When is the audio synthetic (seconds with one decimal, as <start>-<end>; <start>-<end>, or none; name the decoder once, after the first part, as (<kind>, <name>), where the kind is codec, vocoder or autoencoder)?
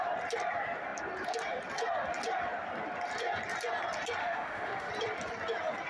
4.2-4.9 (autoencoder, DAC-VAE)